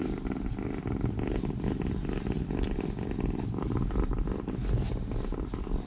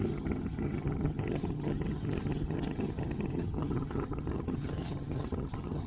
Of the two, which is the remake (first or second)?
second